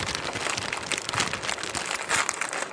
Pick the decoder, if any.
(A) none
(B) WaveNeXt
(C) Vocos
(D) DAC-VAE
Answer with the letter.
A